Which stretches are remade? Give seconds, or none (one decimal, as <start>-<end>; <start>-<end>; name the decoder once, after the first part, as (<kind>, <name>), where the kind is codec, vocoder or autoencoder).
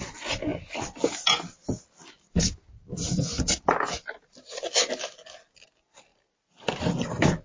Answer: none